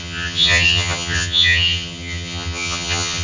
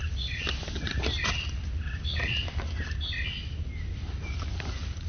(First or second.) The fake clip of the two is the first